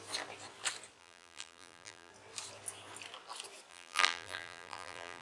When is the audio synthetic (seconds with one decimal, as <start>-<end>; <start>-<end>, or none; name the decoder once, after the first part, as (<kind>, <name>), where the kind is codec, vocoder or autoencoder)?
1.0-2.1 (vocoder, BigVGAN v2); 3.7-5.2